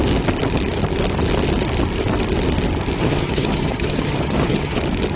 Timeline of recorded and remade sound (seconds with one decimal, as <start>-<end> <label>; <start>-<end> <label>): 0.0-3.0 recorded; 3.0-4.8 remade; 4.8-5.2 recorded